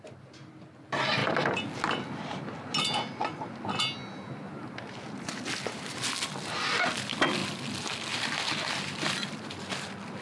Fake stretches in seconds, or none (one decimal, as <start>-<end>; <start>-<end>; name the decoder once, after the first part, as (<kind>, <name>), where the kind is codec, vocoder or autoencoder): none